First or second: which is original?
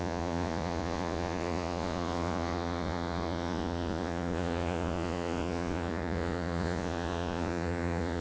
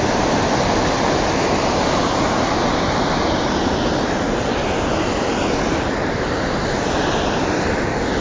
second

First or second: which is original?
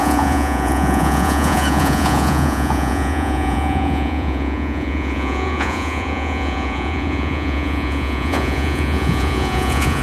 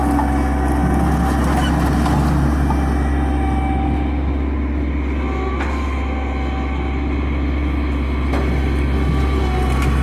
second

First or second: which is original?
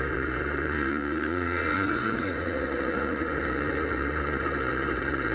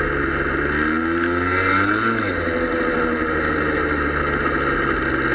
second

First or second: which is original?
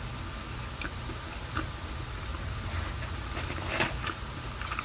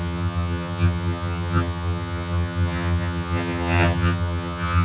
first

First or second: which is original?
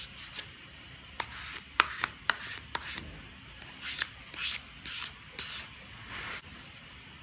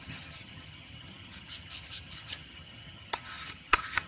first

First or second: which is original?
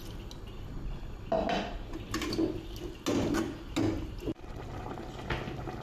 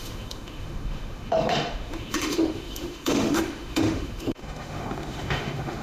first